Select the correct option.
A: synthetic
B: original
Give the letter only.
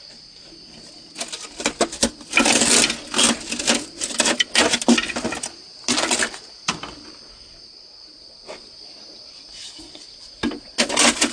B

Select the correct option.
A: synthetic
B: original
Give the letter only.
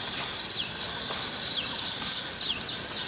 B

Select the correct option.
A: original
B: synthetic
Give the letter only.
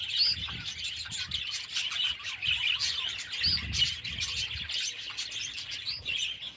A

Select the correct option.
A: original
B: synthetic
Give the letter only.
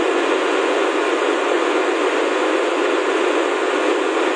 B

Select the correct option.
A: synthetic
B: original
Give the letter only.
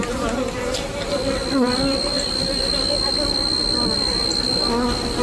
B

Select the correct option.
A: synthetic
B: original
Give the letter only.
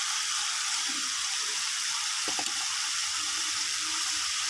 A